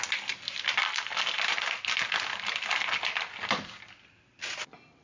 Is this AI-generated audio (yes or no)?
no